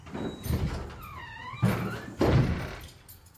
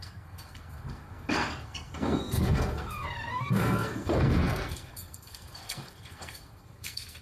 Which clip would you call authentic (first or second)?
first